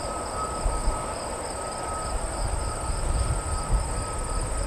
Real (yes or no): no